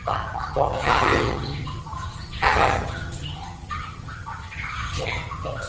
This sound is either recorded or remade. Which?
remade